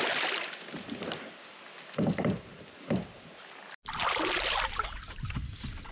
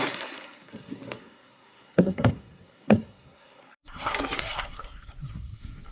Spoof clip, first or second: second